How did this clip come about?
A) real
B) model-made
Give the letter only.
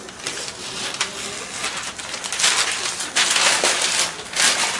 A